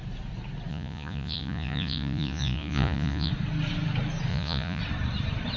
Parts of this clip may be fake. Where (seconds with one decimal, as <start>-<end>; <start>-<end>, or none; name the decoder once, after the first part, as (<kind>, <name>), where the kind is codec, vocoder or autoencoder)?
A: 0.7-3.3 (vocoder, Vocos); 4.3-4.8